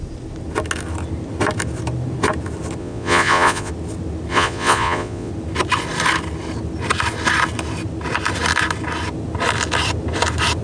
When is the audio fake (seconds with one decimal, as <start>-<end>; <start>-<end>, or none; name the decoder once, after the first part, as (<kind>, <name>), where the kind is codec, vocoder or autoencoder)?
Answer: 2.8-3.7 (vocoder, Vocos); 4.3-5.3